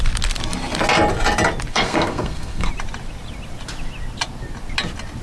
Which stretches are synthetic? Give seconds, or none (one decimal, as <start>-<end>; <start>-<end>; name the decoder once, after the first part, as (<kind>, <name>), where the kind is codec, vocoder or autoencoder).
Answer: 1.7-2.7 (codec, SNAC)